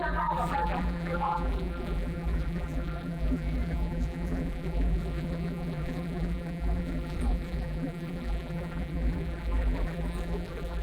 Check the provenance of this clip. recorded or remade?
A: remade